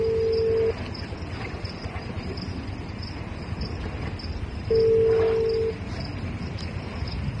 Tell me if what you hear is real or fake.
real